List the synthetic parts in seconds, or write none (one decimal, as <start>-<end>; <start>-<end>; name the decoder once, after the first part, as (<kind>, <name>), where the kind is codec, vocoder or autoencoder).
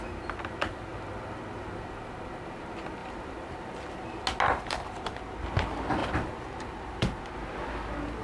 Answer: 3.0-4.1 (vocoder, BigVGAN v2); 4.5-5.4; 6.0-7.2